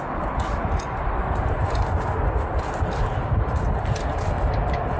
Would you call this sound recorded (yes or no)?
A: yes